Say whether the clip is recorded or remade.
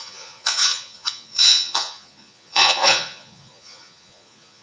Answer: remade